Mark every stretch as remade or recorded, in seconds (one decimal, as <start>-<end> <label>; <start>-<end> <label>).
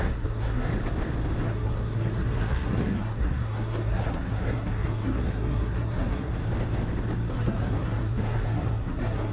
0.0-0.7 remade; 0.7-1.4 recorded; 1.4-6.3 remade; 6.3-7.3 recorded; 7.3-9.3 remade